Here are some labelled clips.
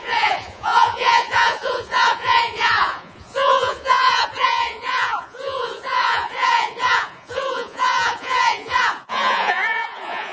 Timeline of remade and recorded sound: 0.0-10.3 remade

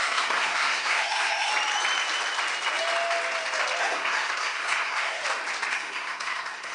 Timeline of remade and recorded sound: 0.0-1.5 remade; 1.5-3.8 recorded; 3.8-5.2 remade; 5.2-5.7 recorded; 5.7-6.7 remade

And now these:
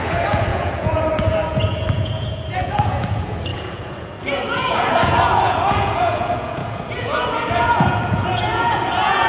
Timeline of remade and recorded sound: 0.0-9.3 remade

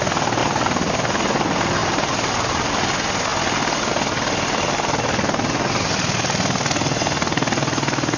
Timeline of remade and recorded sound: 0.0-0.4 recorded; 0.4-0.9 remade; 0.9-1.8 recorded; 1.8-2.7 remade; 2.7-8.2 recorded

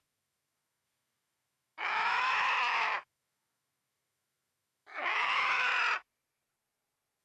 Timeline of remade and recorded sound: 0.0-5.7 remade; 5.7-7.2 recorded

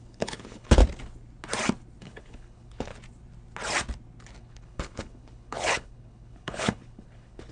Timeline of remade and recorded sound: 0.0-0.8 remade; 0.8-2.0 recorded; 2.0-2.9 remade; 2.9-4.4 recorded; 4.4-7.5 remade

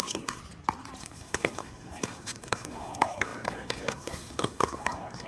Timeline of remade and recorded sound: 0.0-0.4 remade; 0.4-1.0 recorded; 1.0-5.3 remade